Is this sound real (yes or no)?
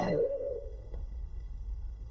no